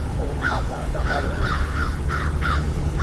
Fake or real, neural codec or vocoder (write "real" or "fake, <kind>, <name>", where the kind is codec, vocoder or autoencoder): fake, codec, HILCodec